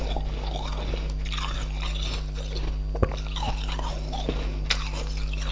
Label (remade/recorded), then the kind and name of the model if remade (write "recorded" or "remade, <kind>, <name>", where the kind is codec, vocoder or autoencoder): recorded